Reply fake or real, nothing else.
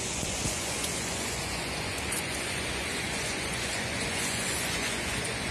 fake